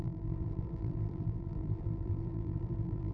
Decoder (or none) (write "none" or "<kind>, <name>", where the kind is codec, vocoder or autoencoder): vocoder, BigVGAN v2